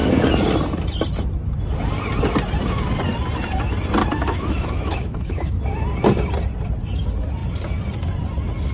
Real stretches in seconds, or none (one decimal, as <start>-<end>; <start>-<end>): 0.0-4.0; 5.6-8.7